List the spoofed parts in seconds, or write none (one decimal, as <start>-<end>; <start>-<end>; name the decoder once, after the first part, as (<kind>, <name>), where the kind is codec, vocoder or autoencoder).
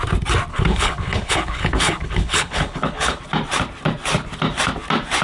0.5-3.2 (codec, HILCodec)